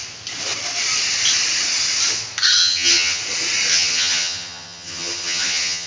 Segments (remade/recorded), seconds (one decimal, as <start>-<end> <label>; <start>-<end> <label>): 0.0-2.6 recorded; 2.6-3.2 remade; 3.2-3.7 recorded; 3.7-5.9 remade